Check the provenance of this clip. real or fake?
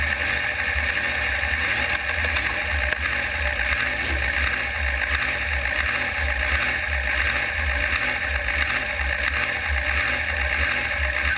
real